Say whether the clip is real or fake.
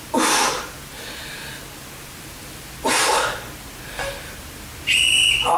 real